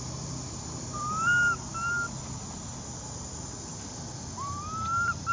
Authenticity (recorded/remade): recorded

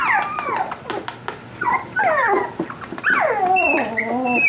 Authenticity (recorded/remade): recorded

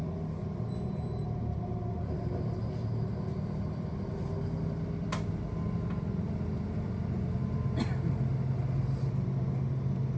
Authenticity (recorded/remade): recorded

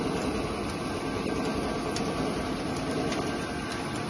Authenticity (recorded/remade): recorded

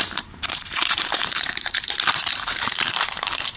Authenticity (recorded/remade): remade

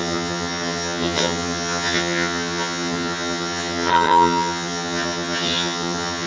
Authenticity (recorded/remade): remade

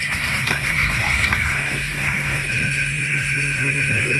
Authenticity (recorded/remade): remade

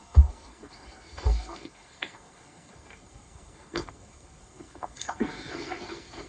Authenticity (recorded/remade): remade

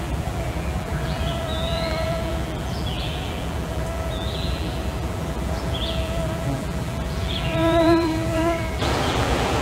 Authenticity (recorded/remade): remade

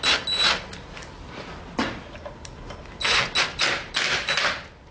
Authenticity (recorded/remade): recorded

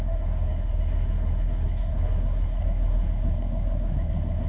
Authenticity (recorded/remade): remade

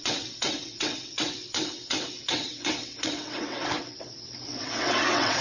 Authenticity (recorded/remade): remade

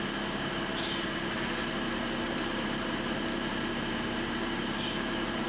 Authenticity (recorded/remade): recorded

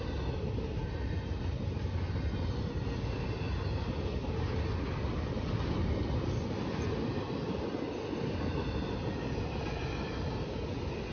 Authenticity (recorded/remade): recorded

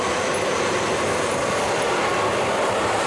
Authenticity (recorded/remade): recorded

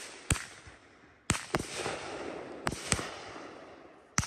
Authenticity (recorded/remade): recorded